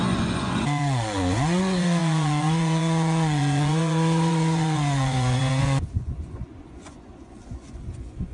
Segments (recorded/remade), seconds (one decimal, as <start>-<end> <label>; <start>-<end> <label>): 0.0-8.3 remade